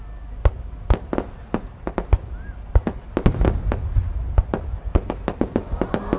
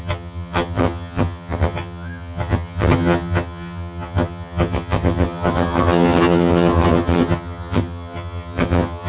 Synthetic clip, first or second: second